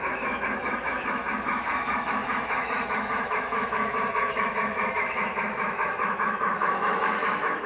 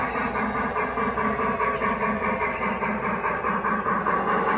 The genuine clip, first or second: second